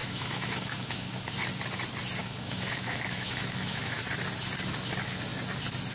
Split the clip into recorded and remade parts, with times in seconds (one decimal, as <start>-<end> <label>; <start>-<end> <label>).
0.0-1.3 remade; 1.3-2.2 recorded; 2.2-4.0 remade; 4.0-5.9 recorded